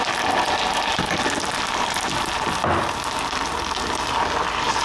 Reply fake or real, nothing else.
real